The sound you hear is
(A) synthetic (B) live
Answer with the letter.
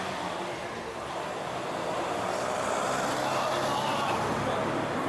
B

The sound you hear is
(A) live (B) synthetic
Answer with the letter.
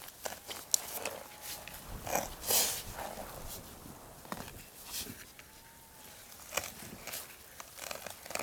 A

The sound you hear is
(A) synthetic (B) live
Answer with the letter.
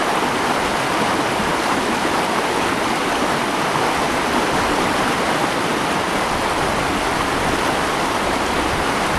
B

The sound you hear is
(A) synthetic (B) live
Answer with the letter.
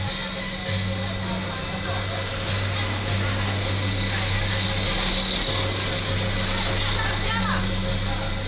B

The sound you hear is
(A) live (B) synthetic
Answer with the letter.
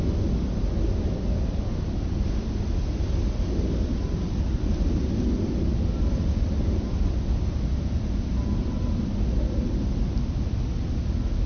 A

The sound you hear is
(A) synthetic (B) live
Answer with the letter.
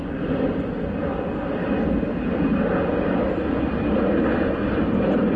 B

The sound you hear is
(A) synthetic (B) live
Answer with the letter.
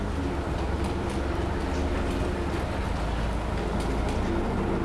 B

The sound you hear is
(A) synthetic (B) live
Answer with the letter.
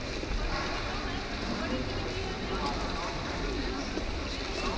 B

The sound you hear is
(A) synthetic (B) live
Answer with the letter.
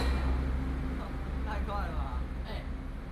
B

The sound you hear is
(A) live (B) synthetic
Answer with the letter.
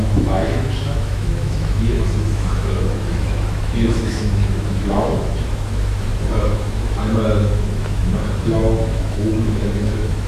B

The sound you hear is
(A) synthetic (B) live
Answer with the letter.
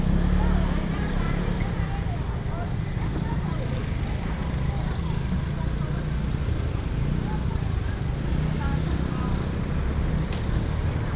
B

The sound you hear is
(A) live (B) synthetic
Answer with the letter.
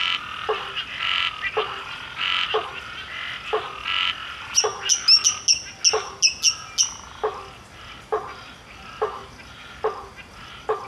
A